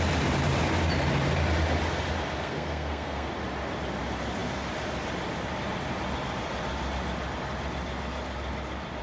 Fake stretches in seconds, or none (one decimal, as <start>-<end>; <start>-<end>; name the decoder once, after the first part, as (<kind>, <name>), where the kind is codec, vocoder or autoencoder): 2.4-3.3 (codec, SNAC)